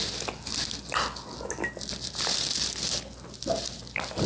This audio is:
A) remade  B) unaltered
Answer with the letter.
B